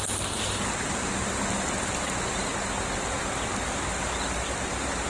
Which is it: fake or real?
real